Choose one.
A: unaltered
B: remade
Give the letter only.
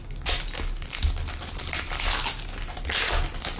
A